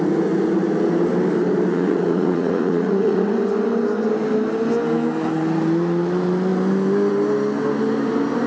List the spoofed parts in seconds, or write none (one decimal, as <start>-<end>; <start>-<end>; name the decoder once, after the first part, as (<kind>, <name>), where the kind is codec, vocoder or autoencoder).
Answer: 1.7-3.3 (vocoder, Vocos)